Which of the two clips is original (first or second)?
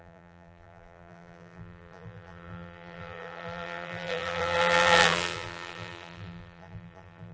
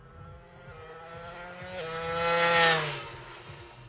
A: second